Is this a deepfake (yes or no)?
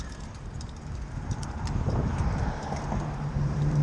yes